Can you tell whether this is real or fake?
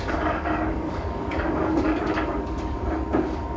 fake